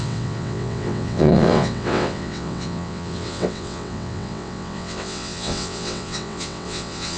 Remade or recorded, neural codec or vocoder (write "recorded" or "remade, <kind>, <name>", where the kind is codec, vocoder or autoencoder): remade, vocoder, WaveNeXt